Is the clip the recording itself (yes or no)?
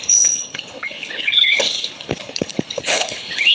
no